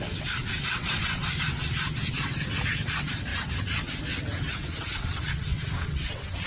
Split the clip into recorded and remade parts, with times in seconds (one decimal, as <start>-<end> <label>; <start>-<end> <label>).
0.0-6.5 remade